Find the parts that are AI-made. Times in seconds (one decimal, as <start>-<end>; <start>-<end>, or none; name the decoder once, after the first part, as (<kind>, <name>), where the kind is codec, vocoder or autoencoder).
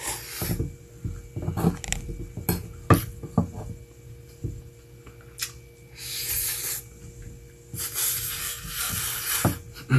8.4-9.0 (codec, SNAC)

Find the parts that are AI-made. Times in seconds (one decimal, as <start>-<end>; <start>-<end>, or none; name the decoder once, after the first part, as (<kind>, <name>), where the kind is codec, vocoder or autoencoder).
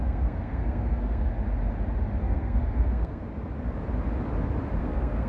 0.0-1.3 (codec, SNAC); 2.2-3.2; 4.8-5.3